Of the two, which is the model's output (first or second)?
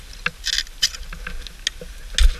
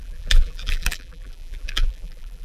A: second